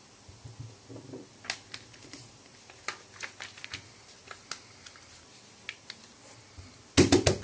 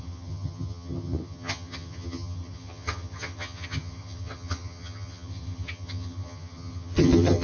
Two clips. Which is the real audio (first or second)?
first